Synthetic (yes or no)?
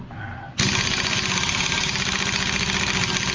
no